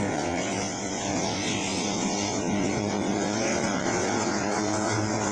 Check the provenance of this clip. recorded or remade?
remade